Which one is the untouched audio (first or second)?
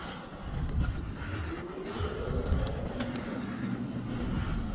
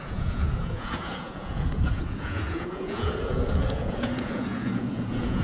first